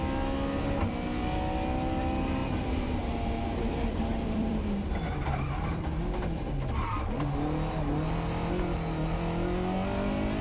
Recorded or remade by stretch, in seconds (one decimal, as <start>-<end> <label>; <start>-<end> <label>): 0.0-4.1 recorded; 4.1-6.4 remade; 6.4-10.4 recorded